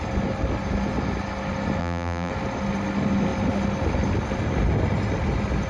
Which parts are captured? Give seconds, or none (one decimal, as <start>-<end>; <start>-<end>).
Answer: 0.0-1.8; 2.3-5.7